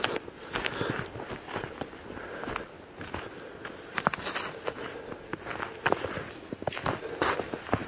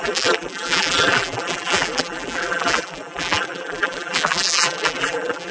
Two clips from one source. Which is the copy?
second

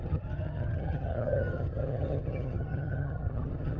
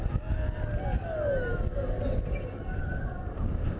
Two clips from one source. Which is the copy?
first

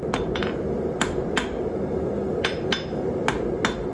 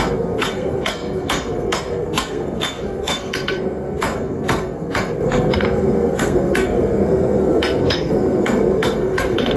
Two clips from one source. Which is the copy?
second